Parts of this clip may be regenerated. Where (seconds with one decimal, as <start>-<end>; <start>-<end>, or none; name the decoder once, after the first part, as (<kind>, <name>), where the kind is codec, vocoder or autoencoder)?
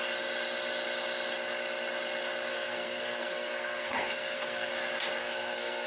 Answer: 2.5-4.7 (codec, SNAC); 5.2-5.9